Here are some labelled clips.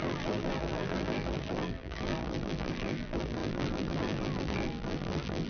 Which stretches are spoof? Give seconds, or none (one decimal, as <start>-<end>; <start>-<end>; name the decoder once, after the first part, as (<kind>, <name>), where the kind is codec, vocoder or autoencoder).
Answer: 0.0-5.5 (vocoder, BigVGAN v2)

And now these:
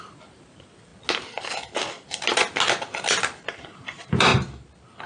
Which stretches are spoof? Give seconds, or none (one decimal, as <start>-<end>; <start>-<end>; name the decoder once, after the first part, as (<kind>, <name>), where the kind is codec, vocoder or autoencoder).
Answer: 0.0-0.9 (vocoder, BigVGAN v2); 3.4-4.3

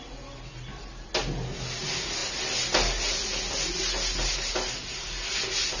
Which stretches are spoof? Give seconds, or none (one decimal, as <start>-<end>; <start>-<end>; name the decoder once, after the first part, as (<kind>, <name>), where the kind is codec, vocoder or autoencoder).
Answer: none

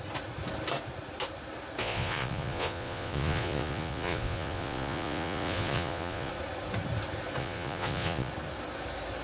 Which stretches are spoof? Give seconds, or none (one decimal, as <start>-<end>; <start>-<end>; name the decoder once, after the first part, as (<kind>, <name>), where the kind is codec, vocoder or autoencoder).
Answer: 1.8-6.3 (vocoder, Vocos); 7.4-8.3

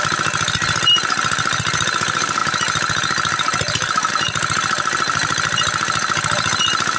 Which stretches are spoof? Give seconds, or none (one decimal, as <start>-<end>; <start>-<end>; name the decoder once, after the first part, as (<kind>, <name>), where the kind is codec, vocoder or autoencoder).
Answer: none